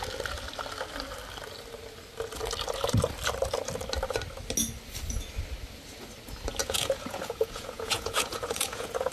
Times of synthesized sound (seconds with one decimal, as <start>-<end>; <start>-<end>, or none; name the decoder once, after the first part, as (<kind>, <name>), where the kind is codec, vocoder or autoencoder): 6.6-9.1 (vocoder, Vocos)